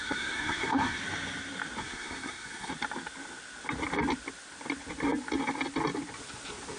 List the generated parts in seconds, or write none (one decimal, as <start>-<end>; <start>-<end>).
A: 0.0-1.0; 1.8-2.7